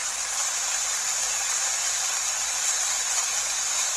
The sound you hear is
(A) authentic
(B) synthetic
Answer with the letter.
A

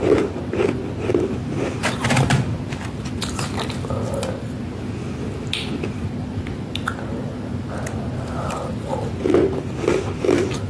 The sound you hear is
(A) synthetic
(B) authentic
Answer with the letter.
B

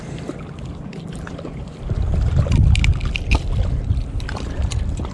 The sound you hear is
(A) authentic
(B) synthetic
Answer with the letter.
A